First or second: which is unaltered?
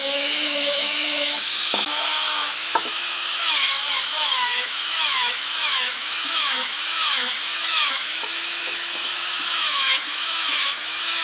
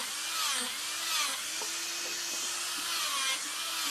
second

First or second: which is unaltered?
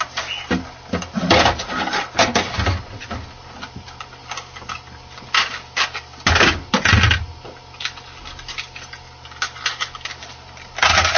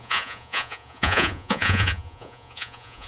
first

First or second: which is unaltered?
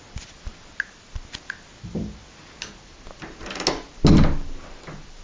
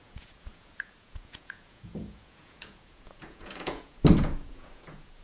first